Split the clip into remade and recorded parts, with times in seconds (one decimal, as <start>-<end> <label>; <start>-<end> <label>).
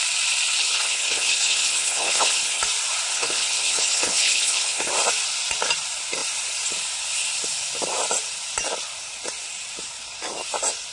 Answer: 0.0-0.6 recorded; 0.6-2.6 remade; 2.6-3.1 recorded; 3.1-4.9 remade; 4.9-10.9 recorded